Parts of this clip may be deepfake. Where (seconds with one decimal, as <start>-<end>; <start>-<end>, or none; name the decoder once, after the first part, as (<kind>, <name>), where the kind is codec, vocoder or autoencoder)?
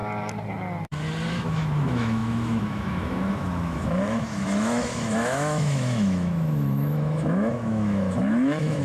1.3-8.8 (autoencoder, DAC-VAE)